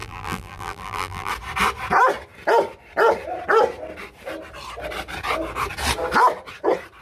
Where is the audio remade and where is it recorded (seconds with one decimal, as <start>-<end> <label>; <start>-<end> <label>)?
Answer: 0.0-1.3 remade; 1.3-7.0 recorded